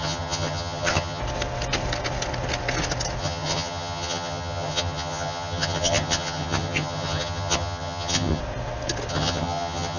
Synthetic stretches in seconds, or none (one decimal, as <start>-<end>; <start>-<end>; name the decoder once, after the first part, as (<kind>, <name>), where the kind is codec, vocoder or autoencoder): 0.0-1.2 (vocoder, HiFi-GAN); 3.2-8.4; 9.1-10.0